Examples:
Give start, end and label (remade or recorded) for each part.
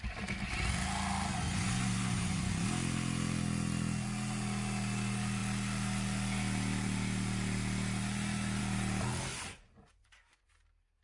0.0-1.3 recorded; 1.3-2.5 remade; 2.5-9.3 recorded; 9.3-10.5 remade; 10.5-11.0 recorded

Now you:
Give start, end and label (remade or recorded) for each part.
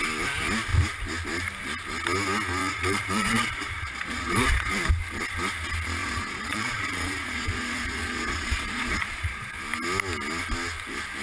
0.0-2.6 recorded; 2.6-4.7 remade; 4.7-6.0 recorded; 6.0-9.5 remade; 9.5-11.2 recorded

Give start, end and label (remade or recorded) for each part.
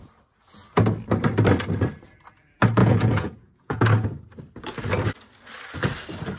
0.0-2.8 recorded; 2.8-3.8 remade; 3.8-6.4 recorded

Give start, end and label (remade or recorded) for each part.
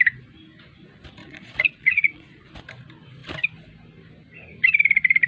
0.0-1.2 recorded; 1.2-2.5 remade; 2.5-5.3 recorded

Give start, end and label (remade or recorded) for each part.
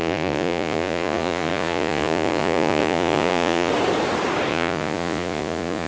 0.0-3.7 remade; 3.7-4.5 recorded; 4.5-5.9 remade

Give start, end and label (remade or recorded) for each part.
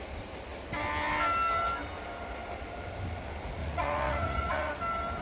0.0-3.6 recorded; 3.6-4.7 remade; 4.7-5.2 recorded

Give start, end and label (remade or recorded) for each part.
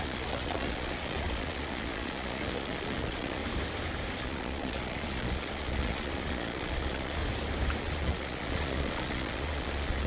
0.0-3.4 remade; 3.4-4.2 recorded; 4.2-7.2 remade; 7.2-7.8 recorded; 7.8-10.1 remade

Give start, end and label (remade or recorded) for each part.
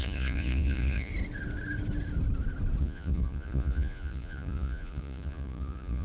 0.0-1.1 remade; 1.1-2.8 recorded; 2.8-6.0 remade